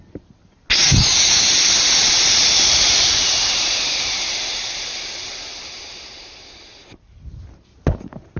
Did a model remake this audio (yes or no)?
no